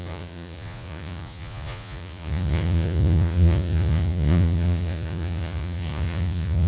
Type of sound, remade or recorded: remade